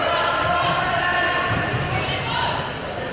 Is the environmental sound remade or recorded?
recorded